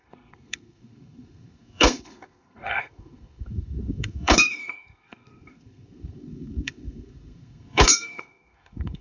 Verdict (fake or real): fake